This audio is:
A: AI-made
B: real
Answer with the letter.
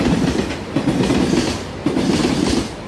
B